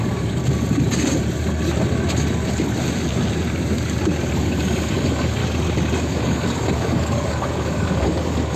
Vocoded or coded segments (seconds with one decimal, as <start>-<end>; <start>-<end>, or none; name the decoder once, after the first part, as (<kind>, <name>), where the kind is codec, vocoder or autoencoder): 0.0-0.4 (codec, DAC); 4.3-5.4; 6.0-8.6